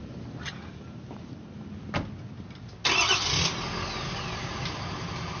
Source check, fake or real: real